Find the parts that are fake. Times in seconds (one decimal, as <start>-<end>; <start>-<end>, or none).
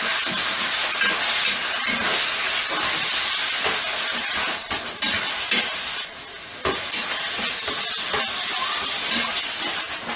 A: none